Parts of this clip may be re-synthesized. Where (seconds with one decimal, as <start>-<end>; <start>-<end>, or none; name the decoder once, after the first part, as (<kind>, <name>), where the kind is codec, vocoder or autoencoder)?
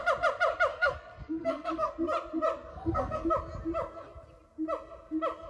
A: 0.7-1.9 (codec, SNAC); 2.7-3.3